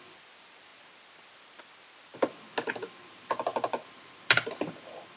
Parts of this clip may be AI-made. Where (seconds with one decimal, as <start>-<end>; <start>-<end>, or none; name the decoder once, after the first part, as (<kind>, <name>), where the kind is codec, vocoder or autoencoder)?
none

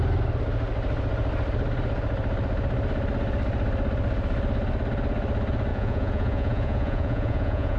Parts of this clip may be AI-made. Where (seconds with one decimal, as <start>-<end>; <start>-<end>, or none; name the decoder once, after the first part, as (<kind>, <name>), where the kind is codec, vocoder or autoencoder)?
5.7-7.8 (vocoder, Vocos)

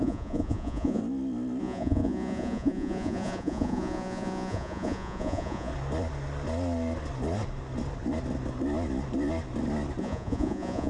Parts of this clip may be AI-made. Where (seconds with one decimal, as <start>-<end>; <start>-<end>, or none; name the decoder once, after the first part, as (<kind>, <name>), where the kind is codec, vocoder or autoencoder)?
0.0-1.0 (vocoder, Vocos); 1.6-5.7; 10.0-10.9

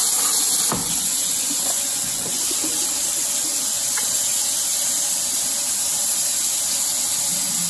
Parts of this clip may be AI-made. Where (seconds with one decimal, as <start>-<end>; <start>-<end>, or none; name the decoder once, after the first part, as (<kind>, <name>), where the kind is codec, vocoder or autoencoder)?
0.8-2.4 (vocoder, Vocos)

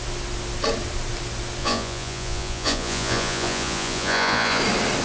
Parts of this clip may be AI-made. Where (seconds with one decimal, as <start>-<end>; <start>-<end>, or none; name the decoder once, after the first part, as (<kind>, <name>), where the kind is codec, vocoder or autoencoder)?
1.6-4.6 (vocoder, Vocos)